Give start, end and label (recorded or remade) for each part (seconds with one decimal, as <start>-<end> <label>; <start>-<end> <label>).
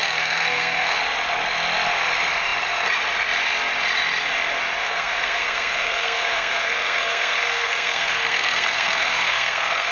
0.0-1.0 remade; 1.0-4.8 recorded; 4.8-9.9 remade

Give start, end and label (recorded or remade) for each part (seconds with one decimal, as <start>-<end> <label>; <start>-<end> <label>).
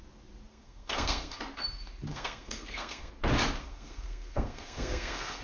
0.0-0.5 recorded; 0.5-1.4 remade; 1.4-2.1 recorded; 2.1-3.1 remade; 3.1-3.6 recorded; 3.6-5.4 remade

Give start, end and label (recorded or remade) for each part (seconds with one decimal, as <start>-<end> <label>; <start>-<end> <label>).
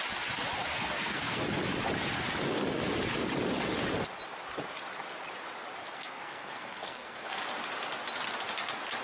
0.0-0.7 recorded; 0.7-1.4 remade; 1.4-5.8 recorded; 5.8-7.4 remade; 7.4-9.0 recorded